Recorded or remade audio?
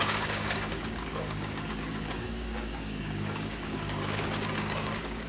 remade